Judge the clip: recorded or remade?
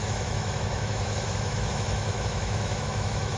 remade